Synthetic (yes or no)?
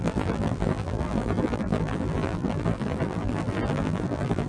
yes